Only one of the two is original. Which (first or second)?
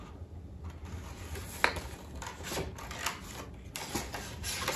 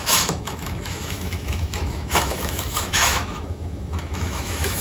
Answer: first